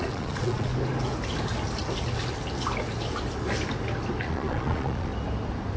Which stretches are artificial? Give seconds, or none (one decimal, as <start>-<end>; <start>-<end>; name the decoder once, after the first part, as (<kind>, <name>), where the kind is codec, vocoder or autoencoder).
0.0-0.7 (vocoder, Vocos); 4.2-5.1